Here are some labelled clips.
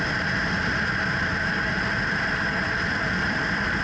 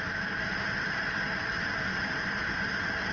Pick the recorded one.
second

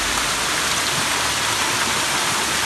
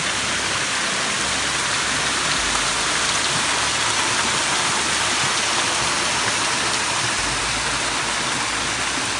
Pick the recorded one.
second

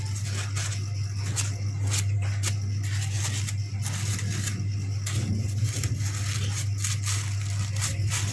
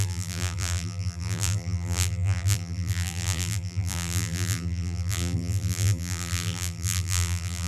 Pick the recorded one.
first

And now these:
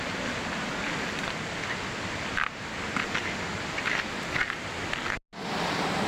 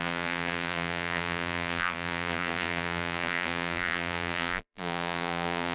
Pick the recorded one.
first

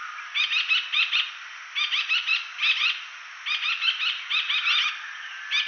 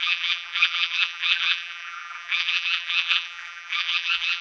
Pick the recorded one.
first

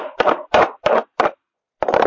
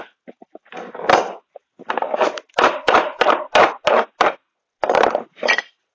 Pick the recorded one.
second